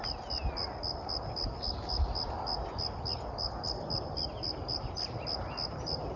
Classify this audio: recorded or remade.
recorded